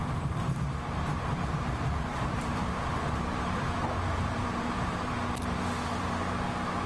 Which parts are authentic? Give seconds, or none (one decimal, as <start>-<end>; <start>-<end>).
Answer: 0.7-1.1; 5.1-6.9